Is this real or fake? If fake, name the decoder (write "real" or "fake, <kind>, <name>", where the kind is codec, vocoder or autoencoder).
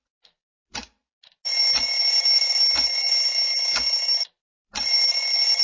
real